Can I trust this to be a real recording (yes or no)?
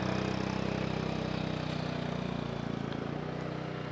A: yes